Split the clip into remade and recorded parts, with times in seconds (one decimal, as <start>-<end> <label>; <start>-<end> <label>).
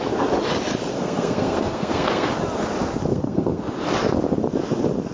0.0-0.9 recorded; 0.9-2.3 remade; 2.3-3.1 recorded; 3.1-3.6 remade; 3.6-5.1 recorded